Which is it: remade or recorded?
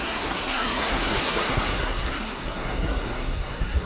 remade